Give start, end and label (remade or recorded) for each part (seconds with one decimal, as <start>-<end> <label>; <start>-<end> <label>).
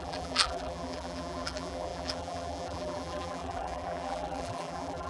0.0-5.1 remade